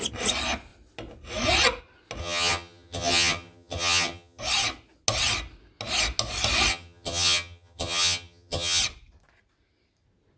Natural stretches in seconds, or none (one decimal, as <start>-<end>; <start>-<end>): 0.0-2.2; 4.4-6.7; 8.8-10.4